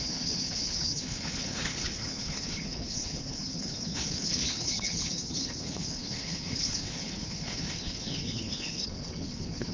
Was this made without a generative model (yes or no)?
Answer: no